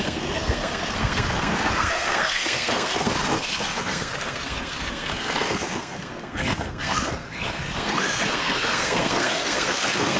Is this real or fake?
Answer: fake